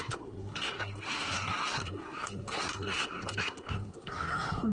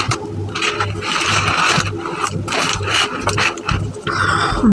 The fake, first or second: first